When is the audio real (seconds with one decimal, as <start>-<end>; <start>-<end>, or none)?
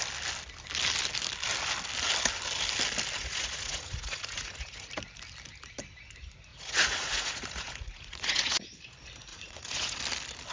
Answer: 0.0-3.2; 4.9-6.5; 8.6-9.3; 10.0-10.5